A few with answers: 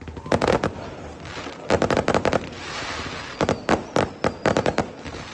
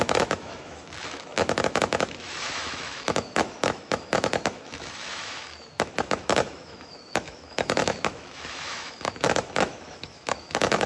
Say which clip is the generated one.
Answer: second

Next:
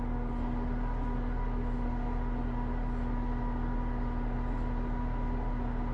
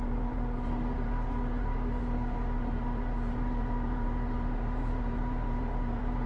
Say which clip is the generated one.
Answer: second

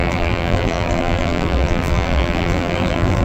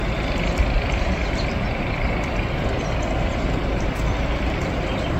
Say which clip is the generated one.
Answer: first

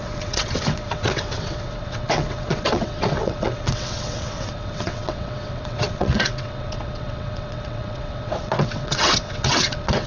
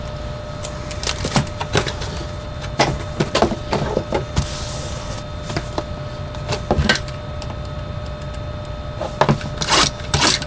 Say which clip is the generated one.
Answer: first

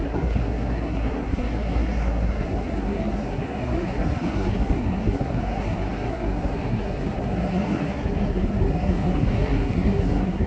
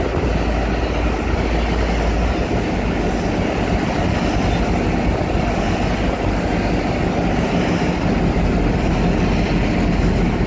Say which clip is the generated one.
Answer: first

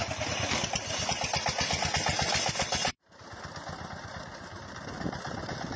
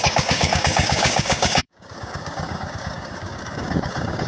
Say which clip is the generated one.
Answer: second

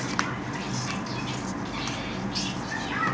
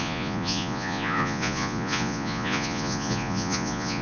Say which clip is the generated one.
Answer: second